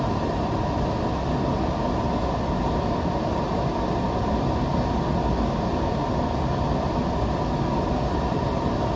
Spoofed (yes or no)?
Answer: no